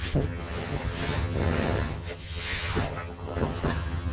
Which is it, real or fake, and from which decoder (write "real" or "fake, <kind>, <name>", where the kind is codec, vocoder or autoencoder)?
fake, vocoder, HiFi-GAN